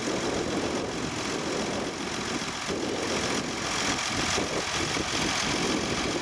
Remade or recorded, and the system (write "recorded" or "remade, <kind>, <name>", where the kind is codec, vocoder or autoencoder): recorded